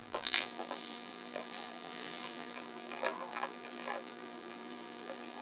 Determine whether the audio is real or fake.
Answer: fake